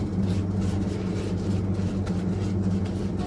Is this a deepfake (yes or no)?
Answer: no